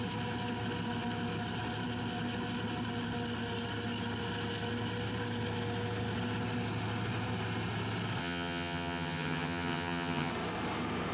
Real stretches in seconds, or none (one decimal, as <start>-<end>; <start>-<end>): 0.0-8.2; 10.3-11.1